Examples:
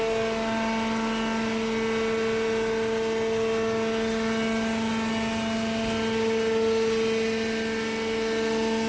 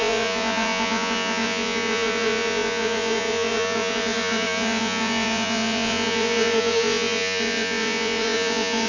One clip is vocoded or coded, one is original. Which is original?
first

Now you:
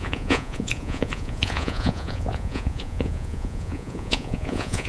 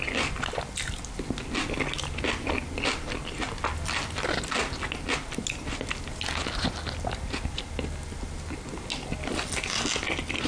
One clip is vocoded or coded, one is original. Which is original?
second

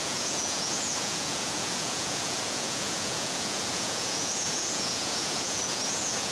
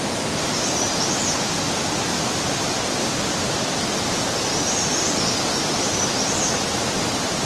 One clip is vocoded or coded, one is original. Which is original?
second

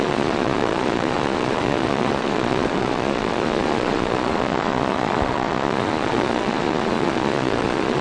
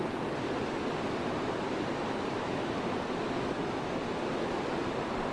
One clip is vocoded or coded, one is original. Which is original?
second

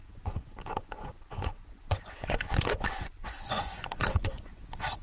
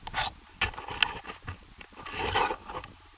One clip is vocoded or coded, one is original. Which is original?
second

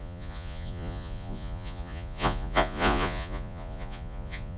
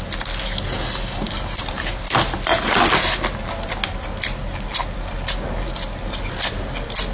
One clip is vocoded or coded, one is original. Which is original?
second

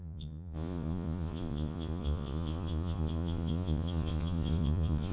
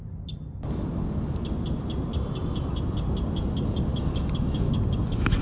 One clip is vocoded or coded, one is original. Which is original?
second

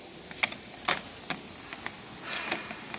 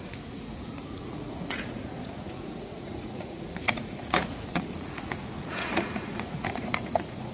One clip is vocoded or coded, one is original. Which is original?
first